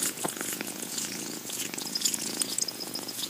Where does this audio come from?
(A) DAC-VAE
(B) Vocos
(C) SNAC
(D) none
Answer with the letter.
B